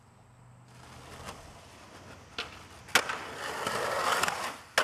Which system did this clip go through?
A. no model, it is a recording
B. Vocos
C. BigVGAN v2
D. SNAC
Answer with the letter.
A